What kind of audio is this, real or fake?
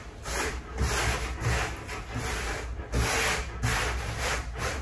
real